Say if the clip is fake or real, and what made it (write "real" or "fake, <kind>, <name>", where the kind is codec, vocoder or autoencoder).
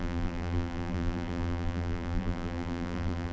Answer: fake, vocoder, BigVGAN v2